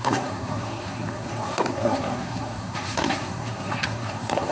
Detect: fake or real fake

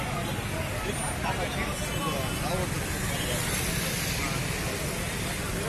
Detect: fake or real real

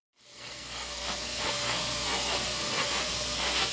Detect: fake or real fake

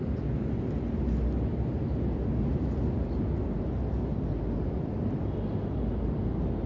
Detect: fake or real real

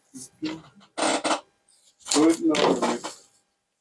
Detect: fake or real real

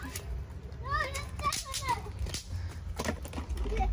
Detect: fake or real real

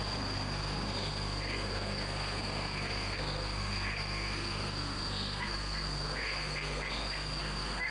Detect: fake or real fake